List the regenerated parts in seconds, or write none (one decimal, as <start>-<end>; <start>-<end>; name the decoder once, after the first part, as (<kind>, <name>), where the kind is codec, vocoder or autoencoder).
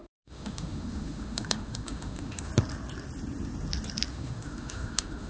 0.0-2.5 (autoencoder, DAC-VAE); 4.1-5.3